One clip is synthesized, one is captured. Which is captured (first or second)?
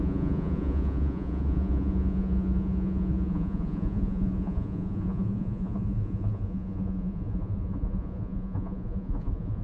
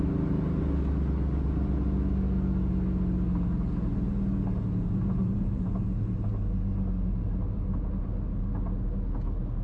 second